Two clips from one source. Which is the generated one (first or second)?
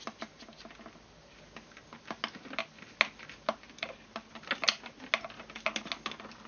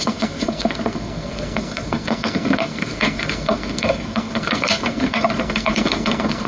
second